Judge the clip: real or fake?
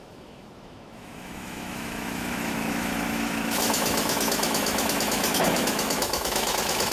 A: fake